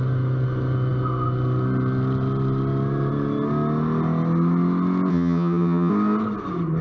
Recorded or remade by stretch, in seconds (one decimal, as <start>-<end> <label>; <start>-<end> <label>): 0.0-5.1 recorded; 5.1-5.9 remade; 5.9-6.8 recorded